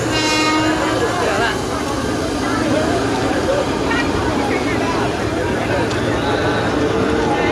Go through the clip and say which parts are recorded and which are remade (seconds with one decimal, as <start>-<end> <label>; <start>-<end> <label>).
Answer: 0.0-3.5 recorded; 3.5-5.2 remade; 5.2-7.5 recorded